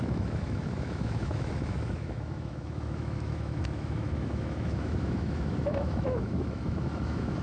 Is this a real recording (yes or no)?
no